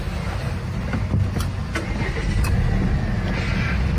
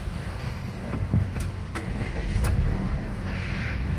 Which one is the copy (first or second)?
second